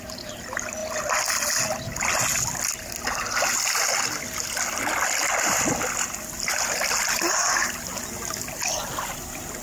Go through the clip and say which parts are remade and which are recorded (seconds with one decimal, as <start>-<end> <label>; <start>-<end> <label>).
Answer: 0.0-0.8 remade; 0.8-5.4 recorded; 5.4-7.4 remade; 7.4-8.6 recorded; 8.6-9.6 remade